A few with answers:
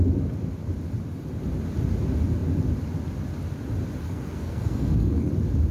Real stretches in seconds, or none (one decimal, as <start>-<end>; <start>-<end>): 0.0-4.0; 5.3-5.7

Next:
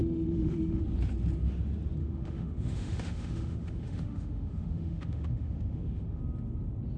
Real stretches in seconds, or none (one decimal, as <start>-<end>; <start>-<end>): 0.8-2.0; 6.2-7.0

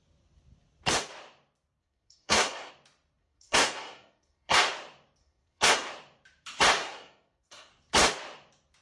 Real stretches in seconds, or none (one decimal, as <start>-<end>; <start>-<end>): 0.0-1.8; 2.7-3.2; 4.7-5.2; 5.9-6.8; 7.7-8.8

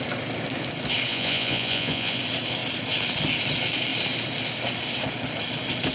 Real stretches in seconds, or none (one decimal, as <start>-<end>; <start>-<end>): 0.0-1.1; 2.2-5.9

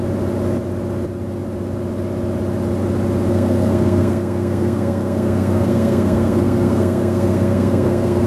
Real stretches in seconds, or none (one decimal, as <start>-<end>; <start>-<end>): 0.0-3.3